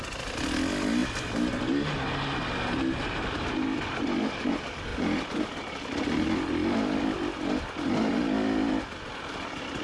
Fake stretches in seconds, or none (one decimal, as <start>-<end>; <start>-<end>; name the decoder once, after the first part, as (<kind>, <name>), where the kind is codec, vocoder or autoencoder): none